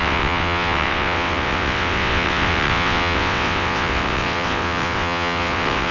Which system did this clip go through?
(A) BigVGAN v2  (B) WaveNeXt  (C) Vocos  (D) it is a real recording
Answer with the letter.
B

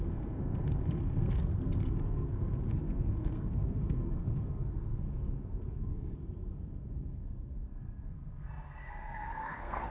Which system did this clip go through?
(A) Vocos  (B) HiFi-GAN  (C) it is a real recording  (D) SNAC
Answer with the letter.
D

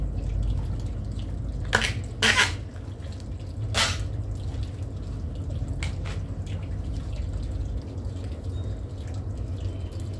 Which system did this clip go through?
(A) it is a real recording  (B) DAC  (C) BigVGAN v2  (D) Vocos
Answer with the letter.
A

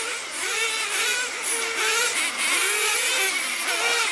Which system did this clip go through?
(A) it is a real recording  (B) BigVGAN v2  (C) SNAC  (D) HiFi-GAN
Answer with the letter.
A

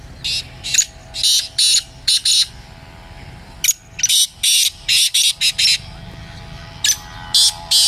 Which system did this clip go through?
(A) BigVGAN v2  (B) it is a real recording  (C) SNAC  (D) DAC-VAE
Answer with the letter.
B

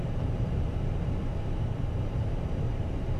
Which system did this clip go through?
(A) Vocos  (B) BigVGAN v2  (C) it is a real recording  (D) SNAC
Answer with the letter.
B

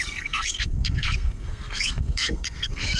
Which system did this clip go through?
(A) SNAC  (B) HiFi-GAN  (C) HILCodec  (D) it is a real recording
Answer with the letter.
A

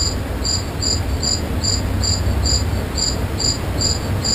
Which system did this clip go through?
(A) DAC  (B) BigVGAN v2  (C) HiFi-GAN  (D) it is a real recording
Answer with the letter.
D